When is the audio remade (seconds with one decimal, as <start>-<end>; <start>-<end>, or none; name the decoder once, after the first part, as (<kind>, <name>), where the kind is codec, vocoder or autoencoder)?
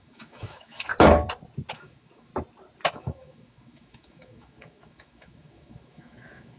0.0-0.9 (autoencoder, DAC-VAE); 1.7-2.3; 2.9-6.6